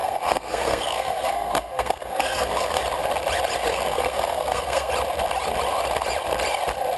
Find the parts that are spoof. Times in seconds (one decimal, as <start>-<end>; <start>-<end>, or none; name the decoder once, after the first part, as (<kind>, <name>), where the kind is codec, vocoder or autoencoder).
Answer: 0.0-2.8 (codec, SNAC); 3.7-4.9